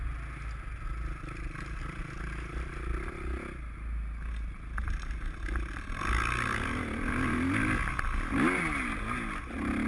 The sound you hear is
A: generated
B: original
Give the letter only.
B